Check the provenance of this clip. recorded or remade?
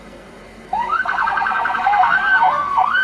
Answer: remade